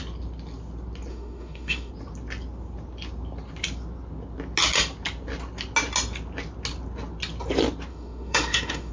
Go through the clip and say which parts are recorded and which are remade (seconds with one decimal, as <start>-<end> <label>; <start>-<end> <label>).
0.0-1.1 recorded; 1.1-1.9 remade; 1.9-7.9 recorded; 7.9-8.9 remade